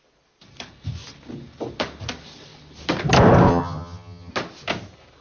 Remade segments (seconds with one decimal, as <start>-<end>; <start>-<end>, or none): 3.5-4.3